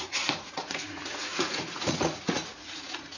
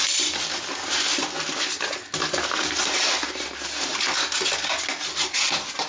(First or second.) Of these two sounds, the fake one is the first